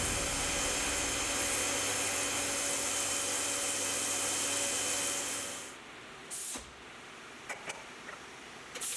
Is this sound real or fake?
real